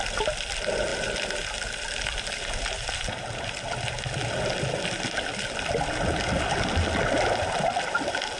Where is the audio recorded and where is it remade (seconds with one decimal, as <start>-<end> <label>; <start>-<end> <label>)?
0.0-8.4 recorded